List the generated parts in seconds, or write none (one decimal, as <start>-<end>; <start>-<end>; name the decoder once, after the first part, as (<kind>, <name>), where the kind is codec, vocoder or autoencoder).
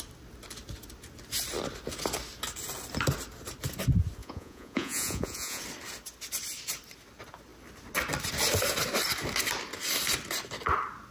4.2-5.6 (vocoder, Vocos)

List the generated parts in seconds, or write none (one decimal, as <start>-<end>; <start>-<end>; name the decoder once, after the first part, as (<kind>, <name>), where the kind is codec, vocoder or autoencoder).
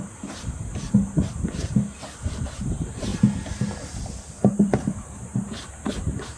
0.0-3.1 (vocoder, BigVGAN v2); 4.5-6.4